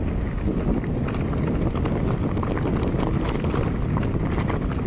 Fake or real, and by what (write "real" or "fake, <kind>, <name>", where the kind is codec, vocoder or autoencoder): real